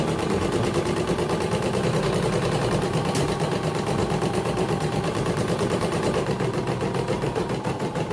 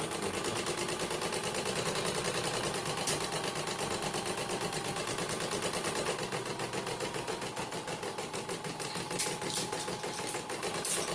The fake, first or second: first